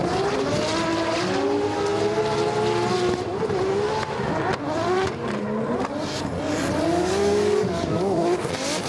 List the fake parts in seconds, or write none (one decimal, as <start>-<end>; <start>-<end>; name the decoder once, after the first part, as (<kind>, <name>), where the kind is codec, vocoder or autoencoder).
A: 6.9-8.5 (codec, DAC)